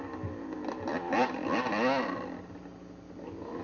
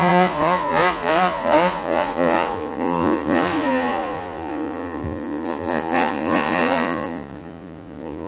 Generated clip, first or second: second